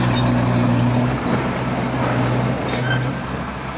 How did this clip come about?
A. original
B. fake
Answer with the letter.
A